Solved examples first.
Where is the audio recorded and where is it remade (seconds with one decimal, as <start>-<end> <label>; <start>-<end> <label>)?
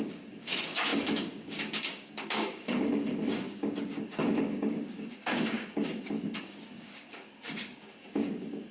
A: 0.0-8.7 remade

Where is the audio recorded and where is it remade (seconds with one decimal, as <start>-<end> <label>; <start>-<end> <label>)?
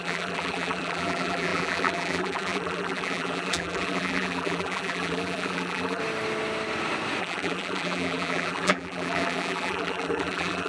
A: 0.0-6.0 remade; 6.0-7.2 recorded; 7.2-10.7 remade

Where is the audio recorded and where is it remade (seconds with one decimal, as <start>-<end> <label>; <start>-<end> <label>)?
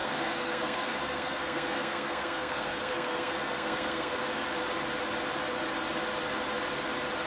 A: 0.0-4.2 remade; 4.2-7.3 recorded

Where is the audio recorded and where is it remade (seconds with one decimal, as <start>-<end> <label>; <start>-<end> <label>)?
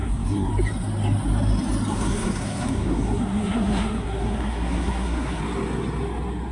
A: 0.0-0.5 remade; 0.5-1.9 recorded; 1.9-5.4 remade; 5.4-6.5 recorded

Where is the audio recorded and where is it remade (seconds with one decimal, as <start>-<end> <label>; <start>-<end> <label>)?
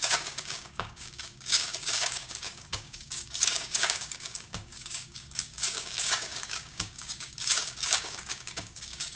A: 0.0-9.2 remade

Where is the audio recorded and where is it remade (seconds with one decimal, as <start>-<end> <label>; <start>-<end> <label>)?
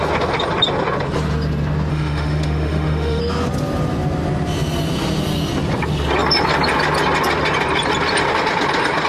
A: 0.0-1.9 recorded; 1.9-3.2 remade; 3.2-9.1 recorded